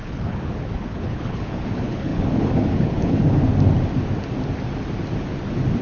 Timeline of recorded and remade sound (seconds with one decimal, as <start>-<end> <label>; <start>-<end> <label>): 0.0-3.4 remade; 3.4-5.8 recorded